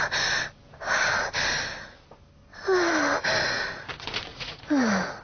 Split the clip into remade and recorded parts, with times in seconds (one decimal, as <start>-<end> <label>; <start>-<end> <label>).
0.0-4.3 recorded; 4.3-5.2 remade